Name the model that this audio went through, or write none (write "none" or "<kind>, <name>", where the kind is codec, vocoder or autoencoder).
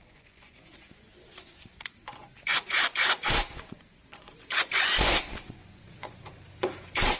vocoder, Vocos